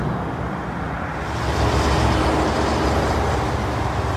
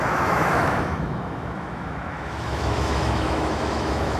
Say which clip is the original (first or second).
first